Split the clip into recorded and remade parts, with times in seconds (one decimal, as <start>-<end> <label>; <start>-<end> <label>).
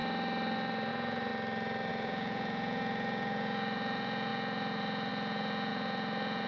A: 0.0-0.9 recorded; 0.9-1.3 remade; 1.3-1.9 recorded; 1.9-6.5 remade